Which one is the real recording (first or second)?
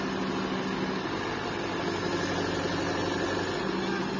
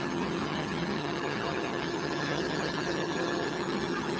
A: first